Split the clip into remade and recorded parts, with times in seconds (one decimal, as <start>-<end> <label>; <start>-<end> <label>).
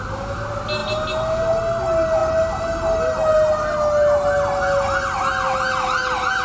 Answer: 0.0-6.4 recorded